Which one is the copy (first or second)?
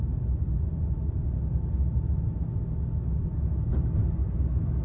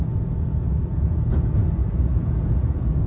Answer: second